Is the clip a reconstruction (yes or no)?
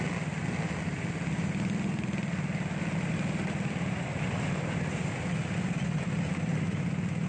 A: no